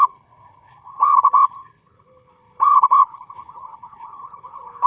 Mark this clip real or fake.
fake